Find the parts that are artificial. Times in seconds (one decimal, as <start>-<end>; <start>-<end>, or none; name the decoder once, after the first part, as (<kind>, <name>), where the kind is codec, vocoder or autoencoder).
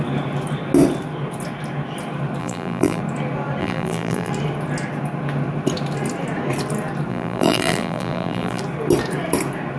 2.4-3.0 (vocoder, BigVGAN v2); 3.6-4.3; 7.1-8.6